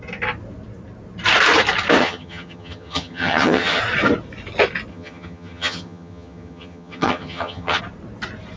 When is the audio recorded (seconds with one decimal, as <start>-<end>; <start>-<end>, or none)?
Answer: 0.0-2.0; 3.8-4.9; 7.8-8.6